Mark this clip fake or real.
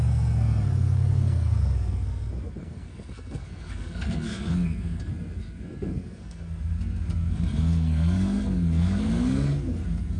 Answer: fake